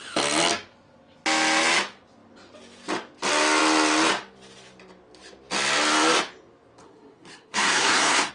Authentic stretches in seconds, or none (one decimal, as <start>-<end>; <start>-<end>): 0.0-6.8